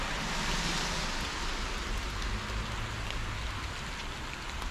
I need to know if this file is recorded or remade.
recorded